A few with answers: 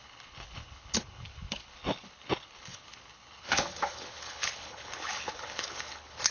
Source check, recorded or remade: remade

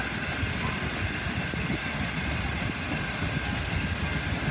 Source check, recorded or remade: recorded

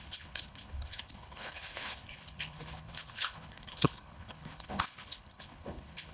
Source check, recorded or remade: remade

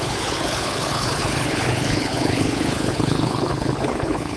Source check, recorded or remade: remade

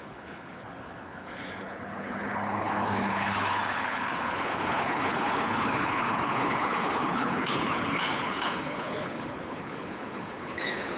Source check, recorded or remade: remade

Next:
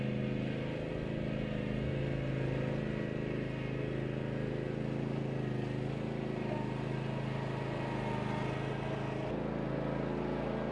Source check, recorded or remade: recorded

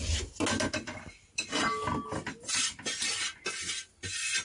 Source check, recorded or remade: recorded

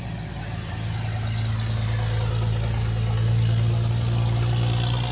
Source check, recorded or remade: recorded